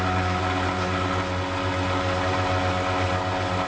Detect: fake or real real